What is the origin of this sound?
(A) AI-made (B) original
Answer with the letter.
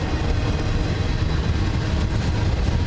B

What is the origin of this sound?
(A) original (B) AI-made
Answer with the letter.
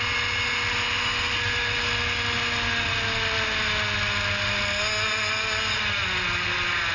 A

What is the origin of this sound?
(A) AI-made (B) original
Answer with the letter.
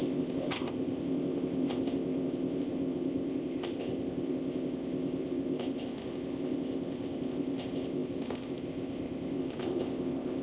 A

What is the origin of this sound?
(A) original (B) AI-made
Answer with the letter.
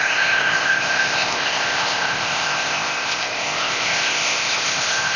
B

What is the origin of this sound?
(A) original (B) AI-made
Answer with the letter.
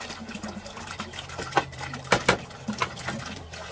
A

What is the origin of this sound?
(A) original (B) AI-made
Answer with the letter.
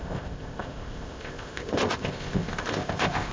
B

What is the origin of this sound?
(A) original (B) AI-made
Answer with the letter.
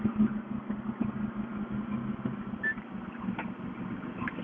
A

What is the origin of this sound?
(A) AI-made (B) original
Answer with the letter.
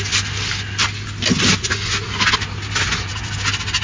B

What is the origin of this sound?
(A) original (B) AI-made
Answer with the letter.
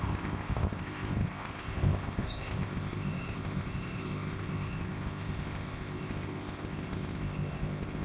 B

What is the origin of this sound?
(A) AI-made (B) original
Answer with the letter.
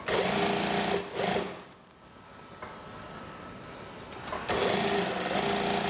B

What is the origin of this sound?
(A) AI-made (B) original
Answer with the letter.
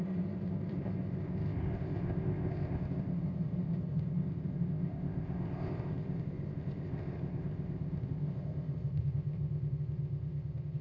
A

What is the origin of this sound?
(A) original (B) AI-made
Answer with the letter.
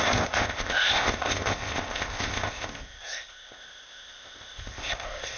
B